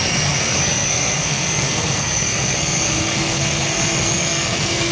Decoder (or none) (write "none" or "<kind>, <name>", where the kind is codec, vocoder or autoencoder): codec, SNAC